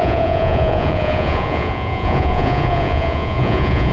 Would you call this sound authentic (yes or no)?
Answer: no